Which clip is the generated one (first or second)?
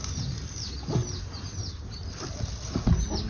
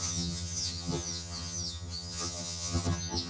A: second